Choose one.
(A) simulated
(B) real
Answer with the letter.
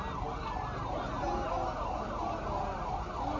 B